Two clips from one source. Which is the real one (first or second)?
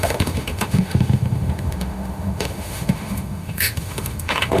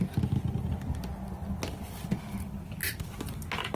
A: second